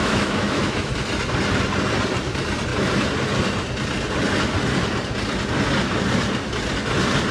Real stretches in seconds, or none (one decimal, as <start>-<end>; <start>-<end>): 0.9-7.3